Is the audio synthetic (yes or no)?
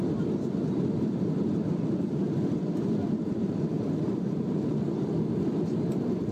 yes